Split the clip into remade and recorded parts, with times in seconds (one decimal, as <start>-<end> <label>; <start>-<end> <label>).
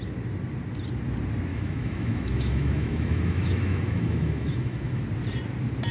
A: 0.0-1.5 recorded; 1.5-5.0 remade; 5.0-5.9 recorded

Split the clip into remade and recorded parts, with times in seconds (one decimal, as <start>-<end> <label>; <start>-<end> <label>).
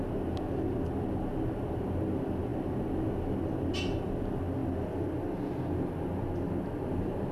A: 0.0-7.3 recorded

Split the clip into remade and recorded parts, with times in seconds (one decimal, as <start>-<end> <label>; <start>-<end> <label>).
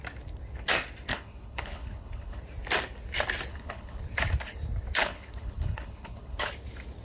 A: 0.0-1.1 recorded; 1.1-2.4 remade; 2.4-3.5 recorded; 3.5-4.0 remade; 4.0-5.0 recorded; 5.0-6.5 remade; 6.5-7.0 recorded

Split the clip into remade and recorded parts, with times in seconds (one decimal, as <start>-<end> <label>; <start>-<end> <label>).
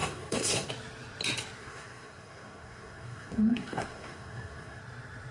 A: 0.0-0.7 remade; 0.7-1.6 recorded; 1.6-4.8 remade; 4.8-5.3 recorded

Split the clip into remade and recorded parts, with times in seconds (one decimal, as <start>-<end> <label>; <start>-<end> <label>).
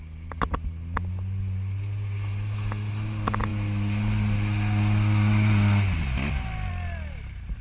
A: 0.0-7.6 recorded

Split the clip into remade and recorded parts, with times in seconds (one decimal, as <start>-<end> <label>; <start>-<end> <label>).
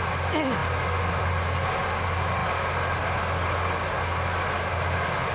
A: 0.0-5.3 recorded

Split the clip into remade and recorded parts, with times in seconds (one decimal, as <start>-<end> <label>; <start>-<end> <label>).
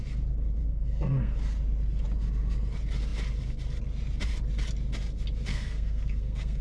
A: 0.0-0.6 recorded; 0.6-1.4 remade; 1.4-5.5 recorded; 5.5-6.6 remade